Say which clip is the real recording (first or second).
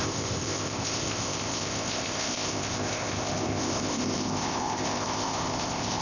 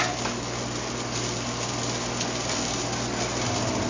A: second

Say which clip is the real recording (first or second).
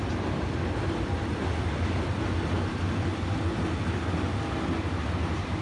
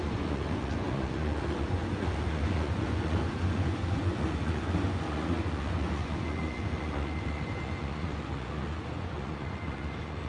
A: first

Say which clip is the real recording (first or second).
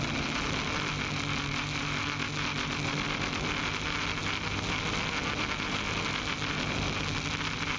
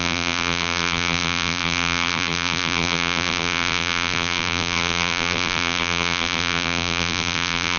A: first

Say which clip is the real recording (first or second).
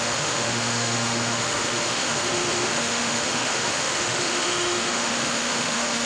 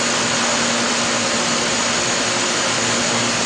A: second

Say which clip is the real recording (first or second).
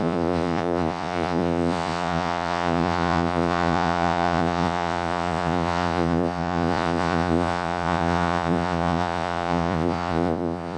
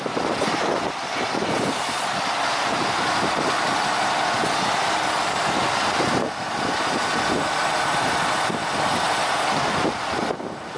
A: second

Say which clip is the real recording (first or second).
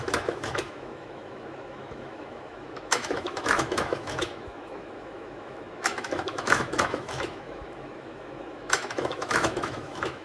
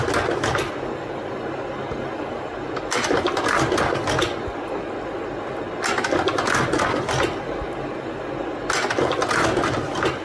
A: second